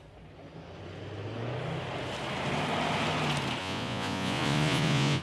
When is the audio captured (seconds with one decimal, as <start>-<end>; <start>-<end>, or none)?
0.0-3.6